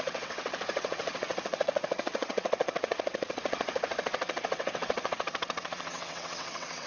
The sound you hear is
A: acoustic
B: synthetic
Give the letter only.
B